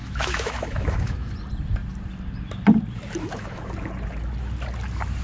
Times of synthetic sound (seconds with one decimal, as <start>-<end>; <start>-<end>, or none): 0.0-1.3; 3.2-3.7